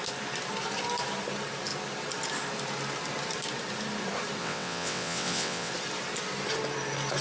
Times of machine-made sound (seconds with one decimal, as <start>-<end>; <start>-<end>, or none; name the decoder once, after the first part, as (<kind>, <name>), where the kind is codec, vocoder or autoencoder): 4.4-5.7 (vocoder, WaveNeXt)